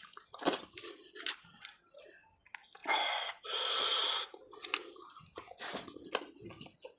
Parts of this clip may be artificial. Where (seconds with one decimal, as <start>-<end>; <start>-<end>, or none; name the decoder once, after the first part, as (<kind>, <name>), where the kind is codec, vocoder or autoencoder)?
none